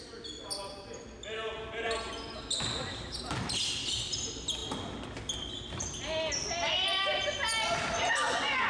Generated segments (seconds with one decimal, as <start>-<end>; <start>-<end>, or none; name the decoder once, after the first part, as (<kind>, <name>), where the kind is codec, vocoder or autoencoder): none

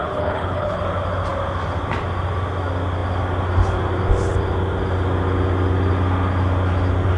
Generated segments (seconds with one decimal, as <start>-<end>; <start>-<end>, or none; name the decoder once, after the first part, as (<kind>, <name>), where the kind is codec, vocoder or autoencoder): 0.0-0.8 (codec, HILCodec)